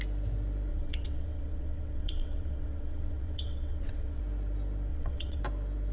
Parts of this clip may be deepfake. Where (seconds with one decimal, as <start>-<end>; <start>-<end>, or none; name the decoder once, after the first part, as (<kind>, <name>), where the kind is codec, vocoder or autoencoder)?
0.7-4.2 (vocoder, WaveNeXt); 4.9-5.4